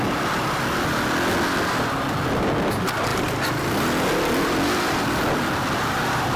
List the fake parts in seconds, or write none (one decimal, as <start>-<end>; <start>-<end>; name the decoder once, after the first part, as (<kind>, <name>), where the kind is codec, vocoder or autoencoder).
none

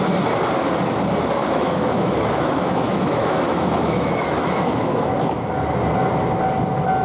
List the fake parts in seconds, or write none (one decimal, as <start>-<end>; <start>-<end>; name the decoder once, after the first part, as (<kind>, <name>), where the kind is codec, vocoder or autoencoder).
1.4-5.1 (autoencoder, DAC-VAE)